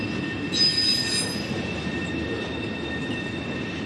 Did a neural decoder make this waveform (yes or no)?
no